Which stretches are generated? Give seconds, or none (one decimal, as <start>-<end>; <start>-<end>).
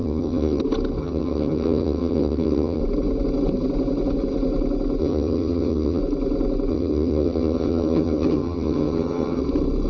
0.0-0.6; 1.0-2.8; 5.0-6.0; 6.7-9.4